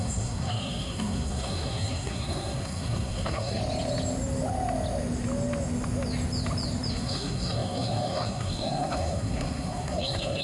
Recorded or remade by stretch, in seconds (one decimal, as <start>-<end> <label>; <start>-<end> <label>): 0.0-3.6 remade; 3.6-6.9 recorded; 6.9-10.4 remade